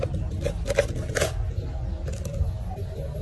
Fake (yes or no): no